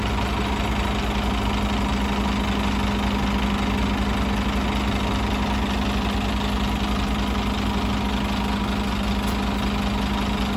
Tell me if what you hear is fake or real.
real